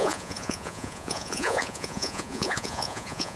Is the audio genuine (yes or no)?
no